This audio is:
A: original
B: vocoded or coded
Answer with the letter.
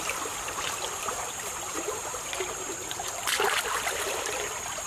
B